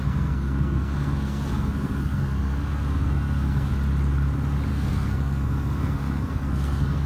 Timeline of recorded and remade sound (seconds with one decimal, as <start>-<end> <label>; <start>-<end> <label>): 0.0-3.7 remade; 3.7-4.7 recorded; 4.7-7.1 remade